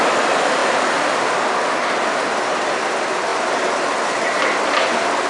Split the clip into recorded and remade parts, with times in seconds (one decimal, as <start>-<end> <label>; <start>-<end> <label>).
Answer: 0.0-5.3 recorded